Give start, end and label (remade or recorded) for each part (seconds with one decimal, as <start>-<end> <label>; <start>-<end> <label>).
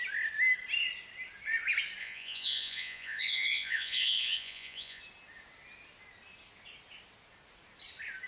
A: 0.0-2.0 recorded; 2.0-5.0 remade; 5.0-8.3 recorded